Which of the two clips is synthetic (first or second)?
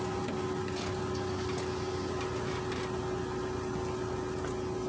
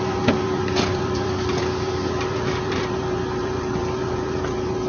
second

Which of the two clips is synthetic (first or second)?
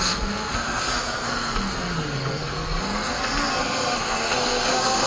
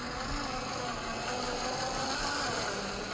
first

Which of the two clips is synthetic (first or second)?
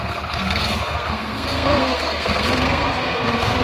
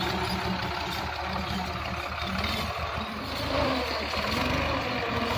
first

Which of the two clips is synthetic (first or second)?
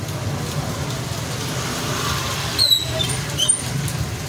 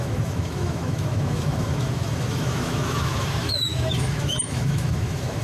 second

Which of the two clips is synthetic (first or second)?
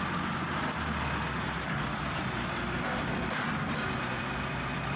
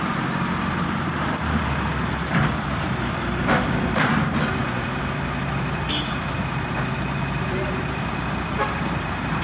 second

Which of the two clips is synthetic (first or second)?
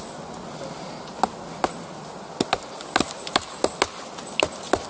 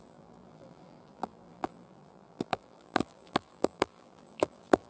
second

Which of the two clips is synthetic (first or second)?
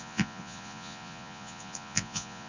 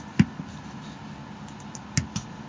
first